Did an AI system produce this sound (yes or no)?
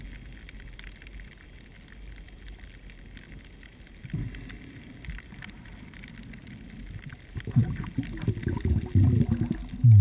no